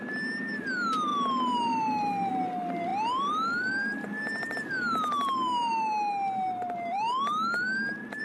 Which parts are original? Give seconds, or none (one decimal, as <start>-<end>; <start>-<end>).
0.0-8.2